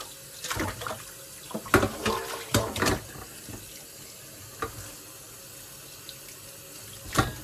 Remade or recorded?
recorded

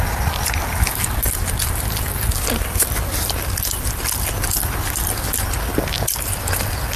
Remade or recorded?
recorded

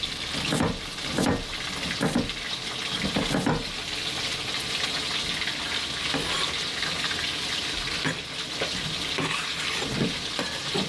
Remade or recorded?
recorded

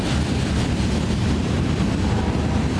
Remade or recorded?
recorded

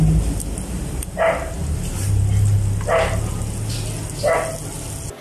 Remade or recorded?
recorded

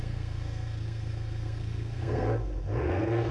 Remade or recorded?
remade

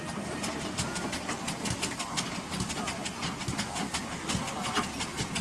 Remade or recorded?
recorded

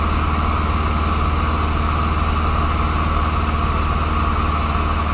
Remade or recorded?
recorded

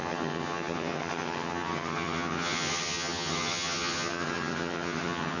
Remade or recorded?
remade